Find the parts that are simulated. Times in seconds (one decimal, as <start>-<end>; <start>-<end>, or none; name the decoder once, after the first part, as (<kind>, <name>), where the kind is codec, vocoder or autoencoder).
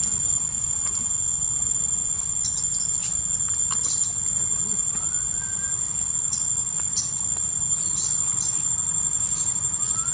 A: none